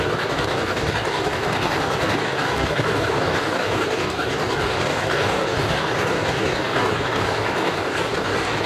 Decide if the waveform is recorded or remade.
remade